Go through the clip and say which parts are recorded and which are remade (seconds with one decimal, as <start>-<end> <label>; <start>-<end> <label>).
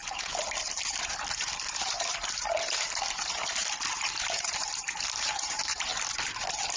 0.0-4.0 recorded; 4.0-5.9 remade; 5.9-6.8 recorded